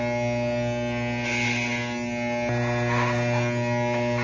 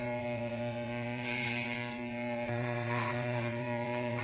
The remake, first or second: second